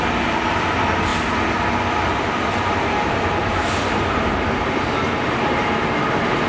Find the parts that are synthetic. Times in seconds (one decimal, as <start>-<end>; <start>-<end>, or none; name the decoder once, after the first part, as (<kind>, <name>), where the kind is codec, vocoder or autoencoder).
3.4-4.0 (vocoder, BigVGAN v2)